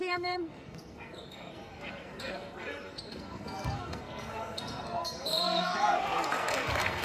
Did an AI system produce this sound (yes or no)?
yes